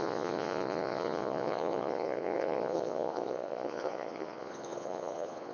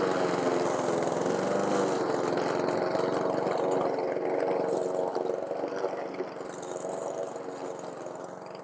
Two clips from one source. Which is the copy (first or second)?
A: first